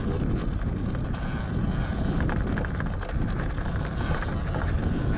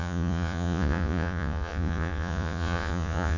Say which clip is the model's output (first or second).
second